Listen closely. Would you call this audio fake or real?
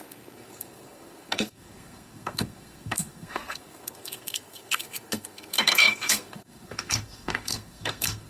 fake